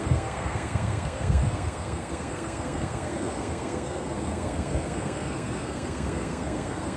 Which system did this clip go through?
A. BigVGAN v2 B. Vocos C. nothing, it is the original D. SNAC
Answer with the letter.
D